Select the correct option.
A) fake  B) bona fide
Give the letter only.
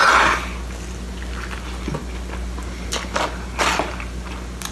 B